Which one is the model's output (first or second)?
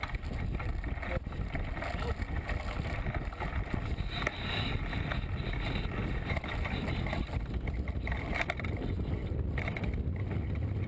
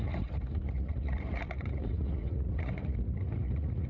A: second